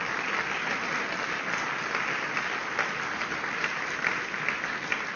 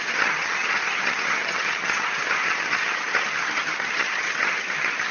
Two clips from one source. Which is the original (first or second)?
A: first